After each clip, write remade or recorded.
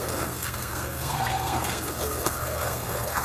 remade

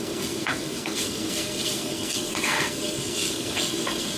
remade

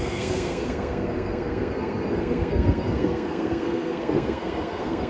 remade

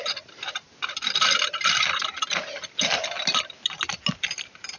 recorded